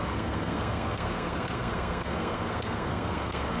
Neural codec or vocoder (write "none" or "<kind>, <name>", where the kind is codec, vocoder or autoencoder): codec, SNAC